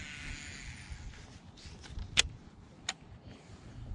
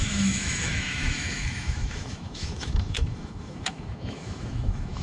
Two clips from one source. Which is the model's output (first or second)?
second